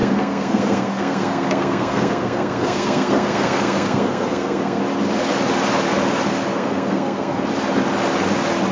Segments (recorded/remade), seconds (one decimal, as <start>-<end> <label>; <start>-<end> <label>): 0.0-4.8 remade; 4.8-6.5 recorded; 6.5-7.5 remade; 7.5-8.7 recorded

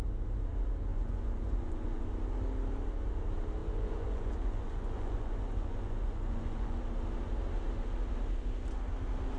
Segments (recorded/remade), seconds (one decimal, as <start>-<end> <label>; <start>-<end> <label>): 0.0-0.9 recorded; 0.9-2.1 remade; 2.1-3.6 recorded; 3.6-6.8 remade; 6.8-9.4 recorded

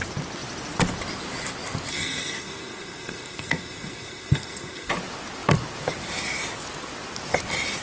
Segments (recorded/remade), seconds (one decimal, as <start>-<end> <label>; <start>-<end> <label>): 0.0-1.9 recorded; 1.9-4.9 remade; 4.9-7.8 recorded

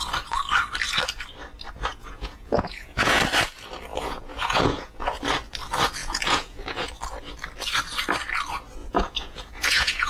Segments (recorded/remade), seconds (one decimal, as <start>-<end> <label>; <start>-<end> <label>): 0.0-1.9 recorded; 1.9-3.2 remade; 3.2-3.9 recorded; 3.9-5.2 remade; 5.2-6.0 recorded; 6.0-6.9 remade; 6.9-8.8 recorded; 8.8-10.1 remade

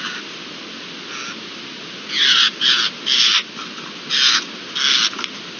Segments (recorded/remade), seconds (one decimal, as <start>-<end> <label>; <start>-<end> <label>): 0.0-5.6 recorded

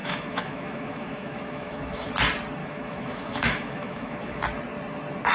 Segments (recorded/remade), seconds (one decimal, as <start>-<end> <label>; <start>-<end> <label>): 0.0-2.1 remade; 2.1-2.6 recorded; 2.6-4.4 remade; 4.4-5.3 recorded

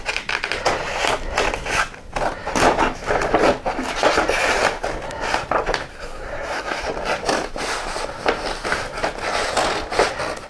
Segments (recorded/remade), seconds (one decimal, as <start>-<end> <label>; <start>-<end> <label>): 0.0-5.9 recorded; 5.9-6.8 remade; 6.8-10.5 recorded